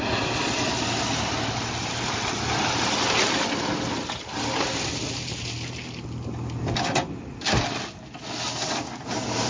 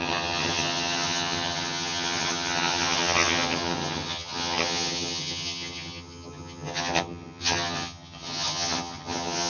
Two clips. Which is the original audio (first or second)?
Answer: first